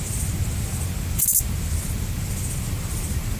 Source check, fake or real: real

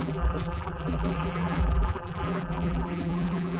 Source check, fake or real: fake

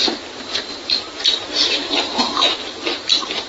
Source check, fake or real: fake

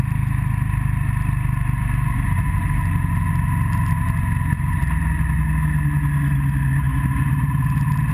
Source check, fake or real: real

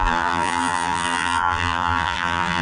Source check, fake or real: fake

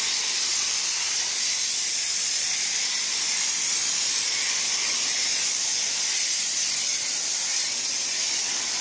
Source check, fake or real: fake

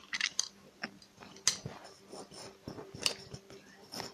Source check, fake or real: real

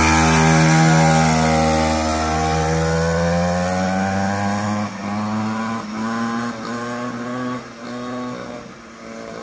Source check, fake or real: real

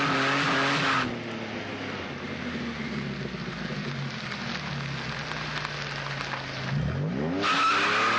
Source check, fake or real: real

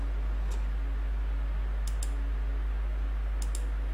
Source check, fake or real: real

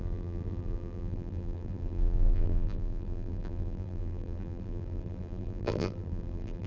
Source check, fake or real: fake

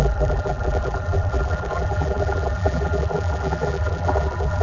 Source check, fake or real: fake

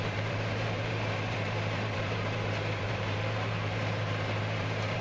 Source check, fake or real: fake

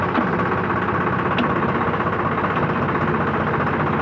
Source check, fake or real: real